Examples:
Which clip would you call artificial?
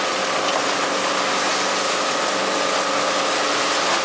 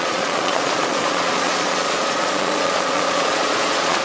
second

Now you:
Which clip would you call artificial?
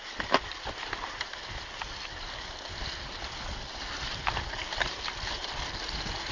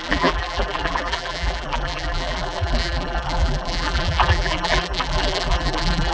second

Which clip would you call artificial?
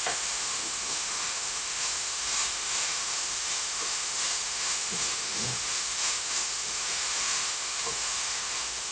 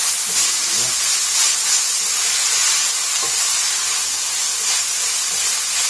first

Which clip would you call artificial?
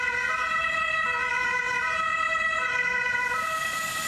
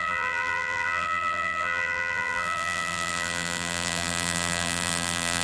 second